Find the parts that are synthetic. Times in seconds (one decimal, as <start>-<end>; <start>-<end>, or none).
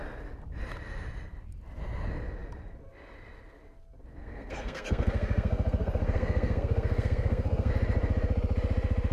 4.2-7.7